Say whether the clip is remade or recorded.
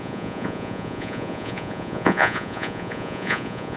remade